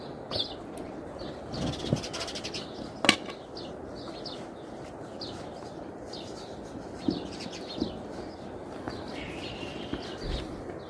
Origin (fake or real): real